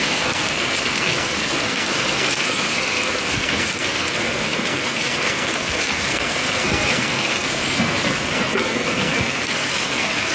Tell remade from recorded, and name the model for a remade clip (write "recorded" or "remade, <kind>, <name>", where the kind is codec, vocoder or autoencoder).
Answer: remade, codec, SNAC